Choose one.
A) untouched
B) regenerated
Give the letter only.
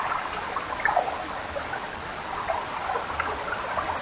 A